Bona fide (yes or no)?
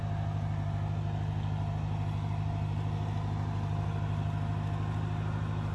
yes